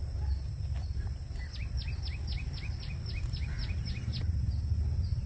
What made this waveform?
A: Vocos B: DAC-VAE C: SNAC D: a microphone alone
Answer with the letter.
D